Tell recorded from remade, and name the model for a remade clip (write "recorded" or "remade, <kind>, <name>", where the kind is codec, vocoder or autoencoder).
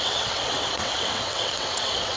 remade, vocoder, WaveNeXt